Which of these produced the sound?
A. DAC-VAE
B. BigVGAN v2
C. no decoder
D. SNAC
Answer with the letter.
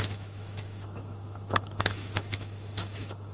A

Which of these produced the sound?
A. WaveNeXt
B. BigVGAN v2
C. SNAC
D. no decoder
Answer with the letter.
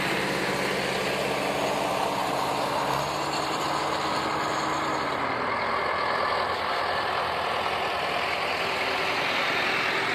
D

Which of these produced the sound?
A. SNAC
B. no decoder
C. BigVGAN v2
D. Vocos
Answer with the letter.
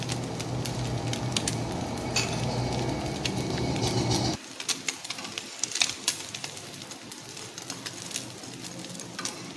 B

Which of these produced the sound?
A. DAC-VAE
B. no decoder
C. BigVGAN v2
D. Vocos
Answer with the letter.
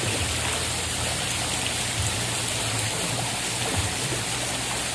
B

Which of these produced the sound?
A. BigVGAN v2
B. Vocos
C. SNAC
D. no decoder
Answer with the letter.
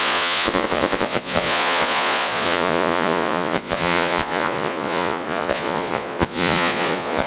B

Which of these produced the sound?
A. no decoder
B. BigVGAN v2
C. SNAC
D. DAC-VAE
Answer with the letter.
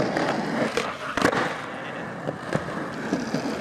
A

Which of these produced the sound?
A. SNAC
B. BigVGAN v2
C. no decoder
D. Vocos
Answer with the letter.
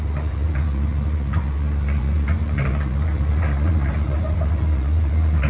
D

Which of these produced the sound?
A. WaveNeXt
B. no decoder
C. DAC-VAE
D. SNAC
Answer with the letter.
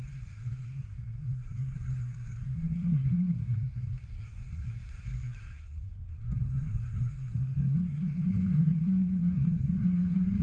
D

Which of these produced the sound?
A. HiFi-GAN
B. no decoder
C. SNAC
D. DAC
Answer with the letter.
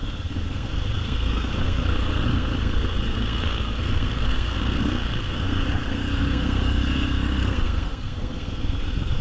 C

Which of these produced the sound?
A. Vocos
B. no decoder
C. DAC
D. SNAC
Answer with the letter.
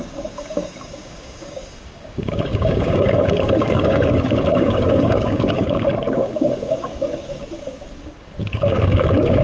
C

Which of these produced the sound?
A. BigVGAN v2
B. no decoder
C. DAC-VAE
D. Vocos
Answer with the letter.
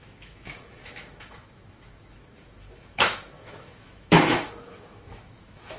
C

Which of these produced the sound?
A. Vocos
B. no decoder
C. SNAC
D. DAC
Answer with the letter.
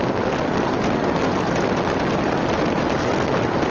B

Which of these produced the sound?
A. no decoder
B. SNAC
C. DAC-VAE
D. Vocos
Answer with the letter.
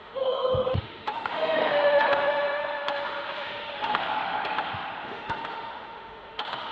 C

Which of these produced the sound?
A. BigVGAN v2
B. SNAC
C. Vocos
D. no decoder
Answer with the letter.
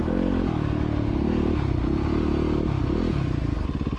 D